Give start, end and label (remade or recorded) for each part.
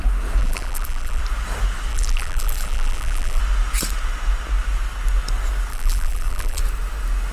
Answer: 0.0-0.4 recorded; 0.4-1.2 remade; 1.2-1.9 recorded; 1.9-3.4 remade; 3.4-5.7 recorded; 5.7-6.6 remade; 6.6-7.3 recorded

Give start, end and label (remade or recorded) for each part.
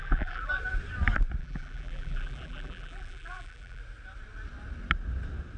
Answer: 0.0-0.5 remade; 0.5-1.4 recorded; 1.4-3.8 remade; 3.8-5.6 recorded